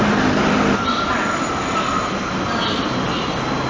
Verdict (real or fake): real